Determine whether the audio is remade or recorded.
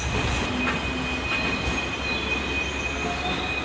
recorded